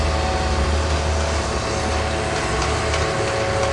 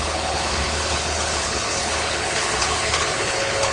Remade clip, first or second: second